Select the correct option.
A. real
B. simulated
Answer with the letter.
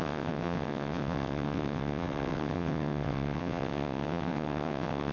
B